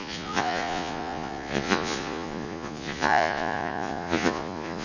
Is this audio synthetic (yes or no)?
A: yes